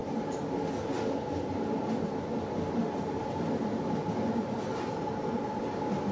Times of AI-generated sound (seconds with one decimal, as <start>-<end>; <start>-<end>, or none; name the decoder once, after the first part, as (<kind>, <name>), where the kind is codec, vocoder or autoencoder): none